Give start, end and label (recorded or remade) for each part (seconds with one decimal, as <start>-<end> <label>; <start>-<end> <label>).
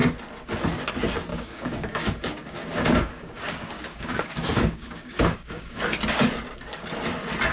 0.0-1.3 recorded; 1.3-5.8 remade; 5.8-7.5 recorded